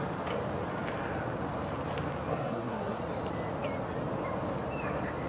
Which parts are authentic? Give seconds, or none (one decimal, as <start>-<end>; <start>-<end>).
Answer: 0.0-2.3; 3.0-5.3